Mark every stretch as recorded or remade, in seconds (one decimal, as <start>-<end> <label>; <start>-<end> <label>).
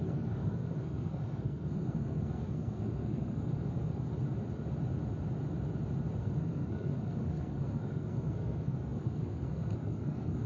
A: 0.0-4.1 remade; 4.1-6.2 recorded; 6.2-10.5 remade